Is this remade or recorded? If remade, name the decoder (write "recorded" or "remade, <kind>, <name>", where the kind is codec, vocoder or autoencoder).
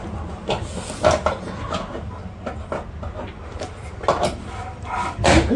recorded